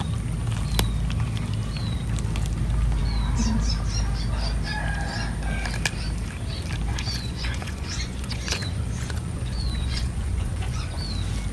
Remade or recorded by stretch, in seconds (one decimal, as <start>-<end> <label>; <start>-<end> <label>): 0.0-6.9 recorded; 6.9-11.0 remade; 11.0-11.5 recorded